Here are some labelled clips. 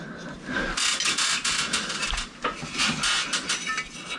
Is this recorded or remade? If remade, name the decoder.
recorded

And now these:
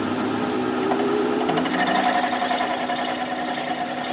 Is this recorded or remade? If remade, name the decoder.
recorded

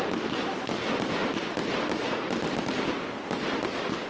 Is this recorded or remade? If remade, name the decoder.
recorded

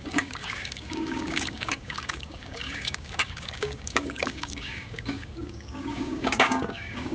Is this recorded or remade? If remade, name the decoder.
remade, codec, DAC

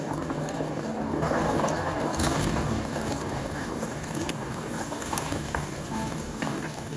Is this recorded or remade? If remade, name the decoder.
remade, codec, DAC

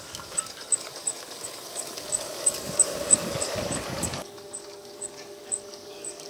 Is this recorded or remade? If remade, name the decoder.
remade, codec, DAC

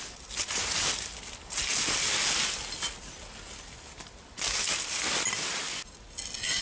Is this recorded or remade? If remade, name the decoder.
recorded